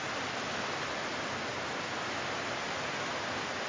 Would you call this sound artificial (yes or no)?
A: no